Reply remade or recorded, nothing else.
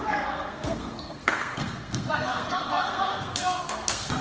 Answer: remade